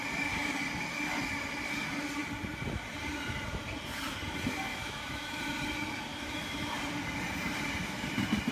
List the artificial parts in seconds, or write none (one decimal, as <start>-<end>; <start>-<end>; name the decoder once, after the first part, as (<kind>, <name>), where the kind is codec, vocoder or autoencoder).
4.7-5.4 (autoencoder, DAC-VAE); 6.1-6.7